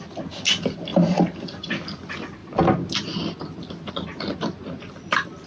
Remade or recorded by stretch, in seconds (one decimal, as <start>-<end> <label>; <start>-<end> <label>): 0.0-0.9 recorded; 0.9-1.7 remade; 1.7-5.5 recorded

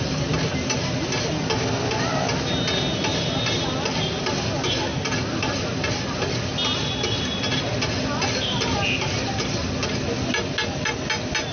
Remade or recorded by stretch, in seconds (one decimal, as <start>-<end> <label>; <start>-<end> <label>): 0.0-11.5 recorded